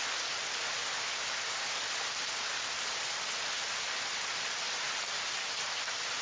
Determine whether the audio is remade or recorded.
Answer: recorded